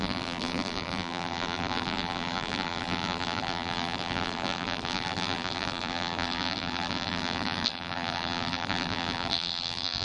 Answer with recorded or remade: remade